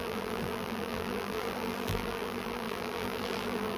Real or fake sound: fake